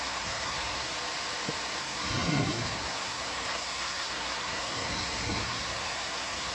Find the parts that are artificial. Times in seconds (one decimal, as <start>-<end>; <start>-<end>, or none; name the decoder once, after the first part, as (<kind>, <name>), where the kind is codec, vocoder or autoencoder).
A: 0.0-0.9 (codec, SNAC); 1.8-6.5